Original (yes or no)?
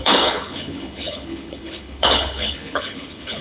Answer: no